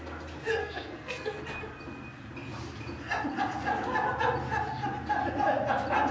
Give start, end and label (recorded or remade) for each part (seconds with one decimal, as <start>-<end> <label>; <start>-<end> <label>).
0.0-0.6 recorded; 0.6-1.4 remade; 1.4-6.1 recorded